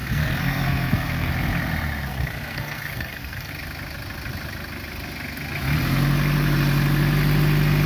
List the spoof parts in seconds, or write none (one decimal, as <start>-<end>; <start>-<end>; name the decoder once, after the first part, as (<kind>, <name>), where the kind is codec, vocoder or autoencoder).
0.0-1.3 (codec, SNAC); 2.1-3.5